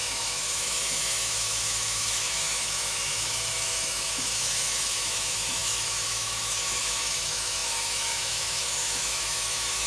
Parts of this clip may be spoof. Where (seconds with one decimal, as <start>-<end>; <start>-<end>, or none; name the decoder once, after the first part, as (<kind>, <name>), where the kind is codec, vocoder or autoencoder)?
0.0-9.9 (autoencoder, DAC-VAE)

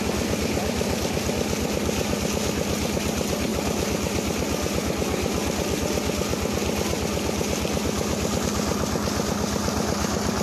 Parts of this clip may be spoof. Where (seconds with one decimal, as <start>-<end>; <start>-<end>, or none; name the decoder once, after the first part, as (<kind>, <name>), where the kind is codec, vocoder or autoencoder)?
none

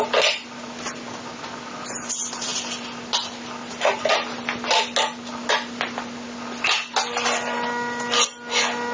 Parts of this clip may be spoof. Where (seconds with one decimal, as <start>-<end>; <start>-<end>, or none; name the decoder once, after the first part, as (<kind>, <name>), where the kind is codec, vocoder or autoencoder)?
none

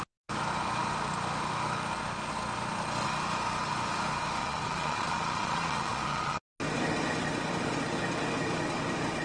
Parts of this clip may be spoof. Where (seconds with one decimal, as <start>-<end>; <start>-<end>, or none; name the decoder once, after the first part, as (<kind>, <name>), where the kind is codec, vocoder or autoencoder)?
4.4-6.4 (vocoder, Vocos)

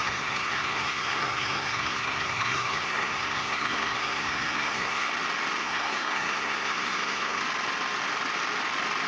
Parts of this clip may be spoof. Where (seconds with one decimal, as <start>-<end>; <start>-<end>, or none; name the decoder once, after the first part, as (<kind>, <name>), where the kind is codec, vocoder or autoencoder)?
0.0-5.1 (codec, SNAC); 5.6-7.4

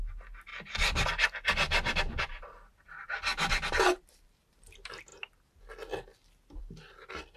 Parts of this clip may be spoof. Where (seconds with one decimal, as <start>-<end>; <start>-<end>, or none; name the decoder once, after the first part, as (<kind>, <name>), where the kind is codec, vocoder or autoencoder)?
none

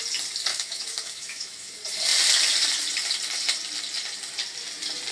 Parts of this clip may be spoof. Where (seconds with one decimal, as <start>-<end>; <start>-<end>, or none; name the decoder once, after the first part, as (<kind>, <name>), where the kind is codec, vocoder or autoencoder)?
0.5-1.7 (autoencoder, DAC-VAE)